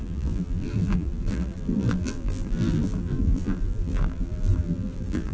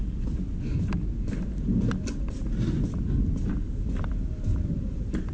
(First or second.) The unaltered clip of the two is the second